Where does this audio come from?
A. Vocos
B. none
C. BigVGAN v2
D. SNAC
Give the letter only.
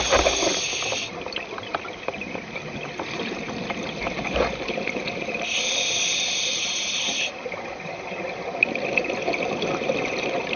B